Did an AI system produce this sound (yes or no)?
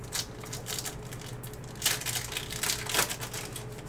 no